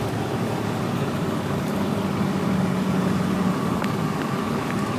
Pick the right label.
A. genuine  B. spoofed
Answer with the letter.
B